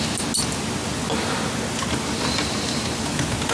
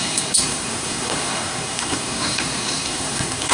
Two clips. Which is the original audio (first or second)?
first